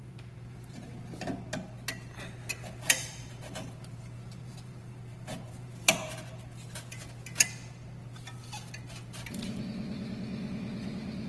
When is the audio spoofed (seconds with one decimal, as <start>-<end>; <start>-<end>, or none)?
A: 0.0-0.9; 2.5-5.9; 9.0-9.6